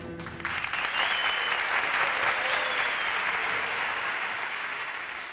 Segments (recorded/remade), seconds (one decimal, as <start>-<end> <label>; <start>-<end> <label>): 0.0-3.4 recorded; 3.4-5.3 remade